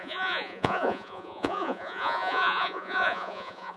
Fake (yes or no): yes